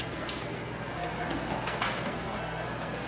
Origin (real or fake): fake